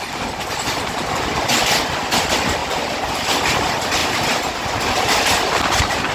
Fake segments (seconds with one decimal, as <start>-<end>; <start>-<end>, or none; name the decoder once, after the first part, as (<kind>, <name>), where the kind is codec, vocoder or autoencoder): 0.0-6.1 (vocoder, BigVGAN v2)

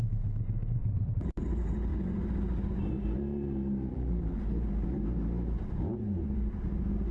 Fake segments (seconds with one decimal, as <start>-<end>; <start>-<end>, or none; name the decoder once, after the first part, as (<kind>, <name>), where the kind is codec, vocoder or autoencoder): 0.8-1.4 (vocoder, BigVGAN v2); 3.9-4.4

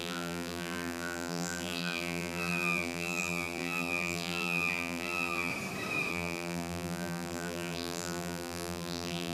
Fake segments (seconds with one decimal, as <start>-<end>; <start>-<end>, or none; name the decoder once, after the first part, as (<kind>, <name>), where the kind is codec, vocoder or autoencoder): 0.0-5.5 (vocoder, BigVGAN v2); 6.1-9.3

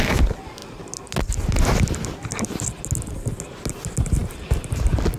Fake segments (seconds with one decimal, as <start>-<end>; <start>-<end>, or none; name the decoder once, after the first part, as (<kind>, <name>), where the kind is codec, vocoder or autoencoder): none